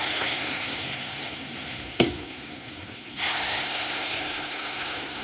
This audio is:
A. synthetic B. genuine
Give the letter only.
A